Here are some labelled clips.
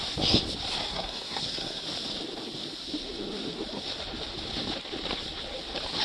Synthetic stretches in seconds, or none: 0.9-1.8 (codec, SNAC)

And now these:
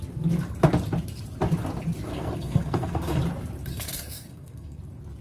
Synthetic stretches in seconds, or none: 2.1-3.2 (codec, SNAC); 3.7-4.8